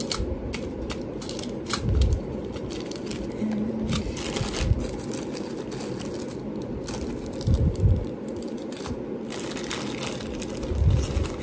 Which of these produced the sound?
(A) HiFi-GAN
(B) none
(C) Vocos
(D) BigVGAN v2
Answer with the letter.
B